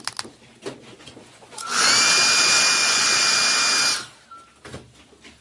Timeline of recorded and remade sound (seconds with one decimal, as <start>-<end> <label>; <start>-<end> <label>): 0.0-0.9 recorded; 0.9-1.9 remade; 1.9-2.8 recorded; 2.8-3.4 remade; 3.4-5.4 recorded